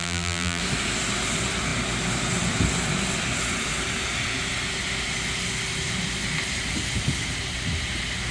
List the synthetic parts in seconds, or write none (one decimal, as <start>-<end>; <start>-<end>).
0.0-0.6